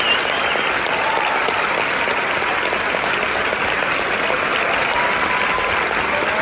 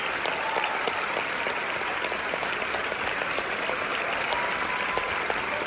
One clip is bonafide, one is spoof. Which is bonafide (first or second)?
first